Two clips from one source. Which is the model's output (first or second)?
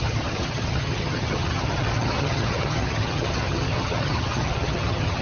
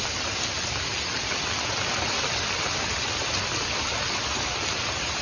first